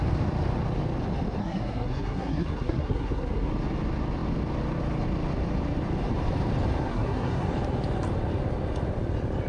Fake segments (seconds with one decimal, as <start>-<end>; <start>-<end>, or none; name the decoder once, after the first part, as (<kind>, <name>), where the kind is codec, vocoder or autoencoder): 1.4-3.5 (codec, SNAC); 6.9-7.5